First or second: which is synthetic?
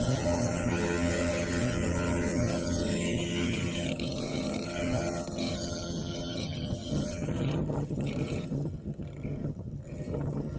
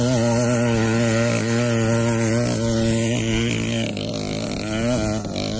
first